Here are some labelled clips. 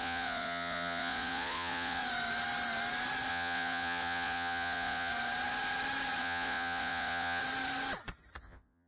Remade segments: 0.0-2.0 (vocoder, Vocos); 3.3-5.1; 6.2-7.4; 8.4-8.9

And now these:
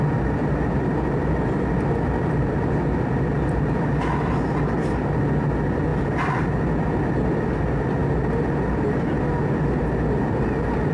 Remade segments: none